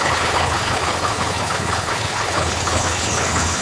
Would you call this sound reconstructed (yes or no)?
yes